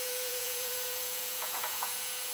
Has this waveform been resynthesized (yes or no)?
yes